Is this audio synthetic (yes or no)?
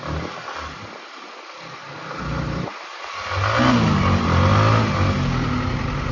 no